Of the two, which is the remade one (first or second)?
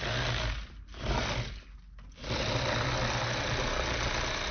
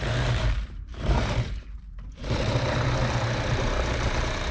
second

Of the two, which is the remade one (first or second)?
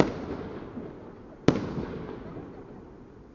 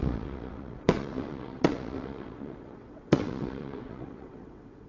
second